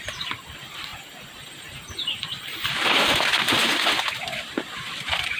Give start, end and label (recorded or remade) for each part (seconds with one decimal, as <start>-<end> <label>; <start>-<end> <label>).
0.0-0.9 recorded; 0.9-3.2 remade; 3.2-5.4 recorded